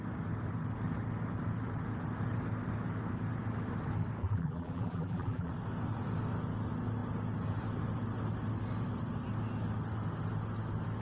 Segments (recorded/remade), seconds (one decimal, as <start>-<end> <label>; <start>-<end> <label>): 0.0-4.2 recorded; 4.2-5.5 remade; 5.5-11.0 recorded